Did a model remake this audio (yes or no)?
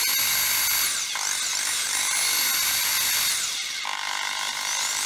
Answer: no